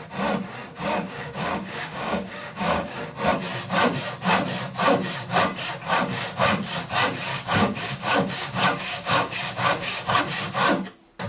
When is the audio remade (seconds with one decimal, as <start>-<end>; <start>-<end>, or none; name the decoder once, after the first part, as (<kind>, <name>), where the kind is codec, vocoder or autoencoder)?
0.7-2.9 (codec, DAC); 7.3-10.2